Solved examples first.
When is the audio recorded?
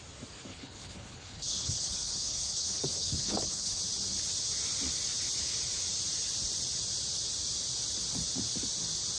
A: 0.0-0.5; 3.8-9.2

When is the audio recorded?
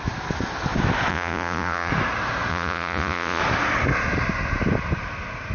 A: 0.0-1.1; 1.9-2.5; 3.4-5.5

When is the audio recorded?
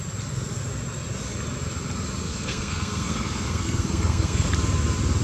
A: 0.0-2.2; 4.5-5.2